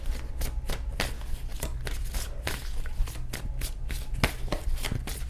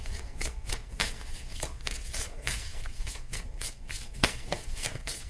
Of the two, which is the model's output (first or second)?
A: second